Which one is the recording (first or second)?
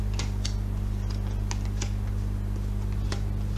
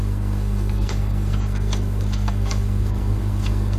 first